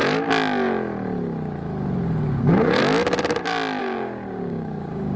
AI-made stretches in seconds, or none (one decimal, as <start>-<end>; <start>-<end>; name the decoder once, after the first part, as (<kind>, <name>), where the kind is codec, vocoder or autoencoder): 2.4-2.8 (codec, DAC); 3.8-5.2